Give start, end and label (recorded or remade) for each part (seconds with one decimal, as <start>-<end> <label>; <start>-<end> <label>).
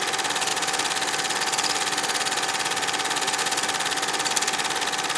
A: 0.0-5.2 recorded